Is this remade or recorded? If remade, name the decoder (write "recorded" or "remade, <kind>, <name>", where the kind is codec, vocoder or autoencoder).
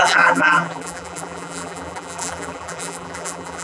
remade, vocoder, BigVGAN v2